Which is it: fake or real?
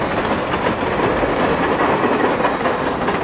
real